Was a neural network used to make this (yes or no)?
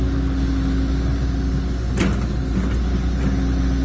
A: no